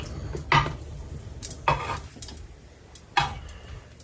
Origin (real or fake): real